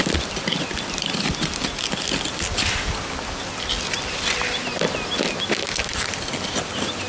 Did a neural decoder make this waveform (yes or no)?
no